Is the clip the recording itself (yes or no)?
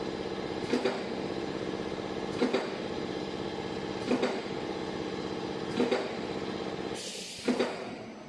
yes